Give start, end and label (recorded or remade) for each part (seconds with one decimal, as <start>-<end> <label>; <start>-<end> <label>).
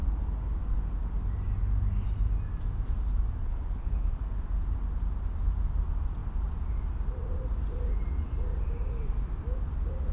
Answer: 0.0-3.4 recorded; 3.4-4.2 remade; 4.2-10.1 recorded